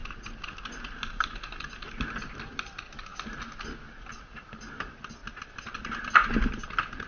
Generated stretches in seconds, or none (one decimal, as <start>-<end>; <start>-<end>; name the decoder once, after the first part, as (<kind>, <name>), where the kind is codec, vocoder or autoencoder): none